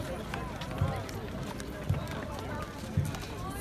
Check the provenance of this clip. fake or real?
real